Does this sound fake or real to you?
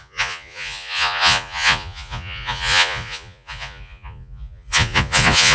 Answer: fake